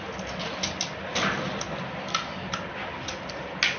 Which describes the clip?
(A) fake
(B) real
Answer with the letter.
B